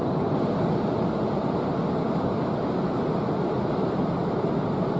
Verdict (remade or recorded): recorded